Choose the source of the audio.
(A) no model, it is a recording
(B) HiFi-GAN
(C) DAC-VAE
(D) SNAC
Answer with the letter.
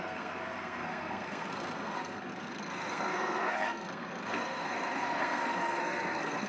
D